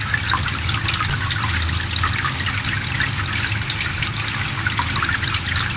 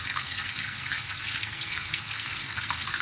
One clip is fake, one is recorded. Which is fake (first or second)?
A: second